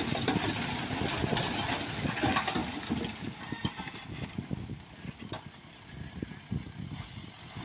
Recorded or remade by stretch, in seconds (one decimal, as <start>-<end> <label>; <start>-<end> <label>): 0.0-7.6 recorded

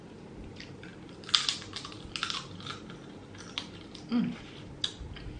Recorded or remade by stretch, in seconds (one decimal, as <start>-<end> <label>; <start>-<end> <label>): 0.0-5.4 recorded

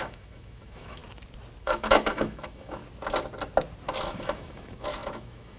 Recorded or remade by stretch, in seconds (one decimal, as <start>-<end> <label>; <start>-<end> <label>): 0.0-1.0 remade; 1.0-1.6 recorded; 1.6-2.8 remade; 2.8-4.0 recorded; 4.0-5.6 remade

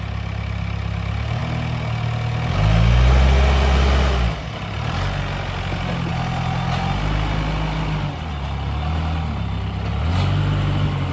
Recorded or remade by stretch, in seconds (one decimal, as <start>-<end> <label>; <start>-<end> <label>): 0.0-11.1 recorded

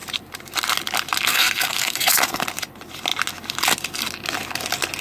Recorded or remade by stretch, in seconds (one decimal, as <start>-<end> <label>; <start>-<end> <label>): 0.0-1.3 recorded; 1.3-2.4 remade; 2.4-5.0 recorded

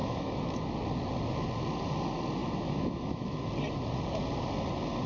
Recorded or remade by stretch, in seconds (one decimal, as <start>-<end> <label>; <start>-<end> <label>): 0.0-0.7 remade; 0.7-2.4 recorded; 2.4-3.5 remade; 3.5-5.1 recorded